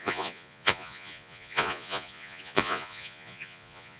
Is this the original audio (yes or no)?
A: no